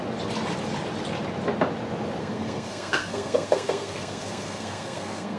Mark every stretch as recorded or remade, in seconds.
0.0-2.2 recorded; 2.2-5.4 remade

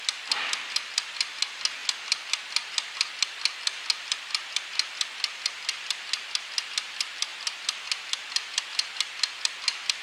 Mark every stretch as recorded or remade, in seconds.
0.0-10.0 recorded

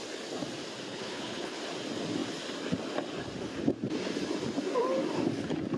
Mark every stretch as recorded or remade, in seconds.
0.0-0.9 recorded; 0.9-1.6 remade; 1.6-5.8 recorded

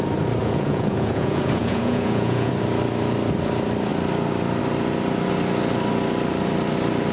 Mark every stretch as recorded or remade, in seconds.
0.0-0.4 recorded; 0.4-2.5 remade; 2.5-7.1 recorded

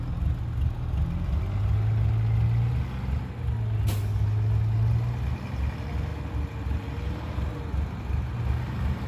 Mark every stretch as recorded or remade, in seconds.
0.0-9.1 recorded

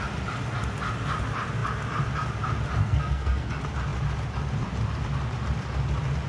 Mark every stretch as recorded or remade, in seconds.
0.0-2.8 recorded; 2.8-3.5 remade; 3.5-6.3 recorded